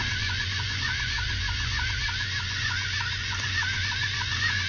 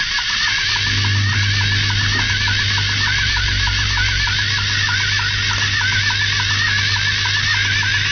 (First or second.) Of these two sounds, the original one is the second